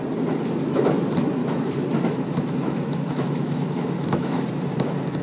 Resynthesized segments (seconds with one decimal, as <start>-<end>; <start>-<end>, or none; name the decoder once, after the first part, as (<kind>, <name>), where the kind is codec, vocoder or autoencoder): 1.4-4.5 (autoencoder, DAC-VAE)